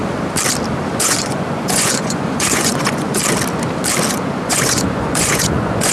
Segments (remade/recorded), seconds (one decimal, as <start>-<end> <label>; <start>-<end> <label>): 0.0-0.9 recorded; 0.9-3.2 remade; 3.2-4.1 recorded; 4.1-5.9 remade